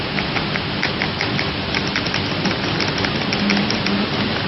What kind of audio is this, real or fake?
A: real